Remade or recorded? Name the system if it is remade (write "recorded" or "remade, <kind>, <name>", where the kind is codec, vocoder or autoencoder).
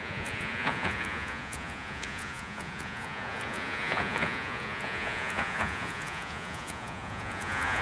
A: remade, vocoder, Vocos